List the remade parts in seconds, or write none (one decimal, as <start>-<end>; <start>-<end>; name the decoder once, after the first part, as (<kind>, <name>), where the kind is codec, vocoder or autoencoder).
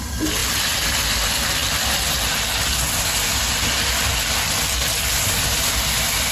none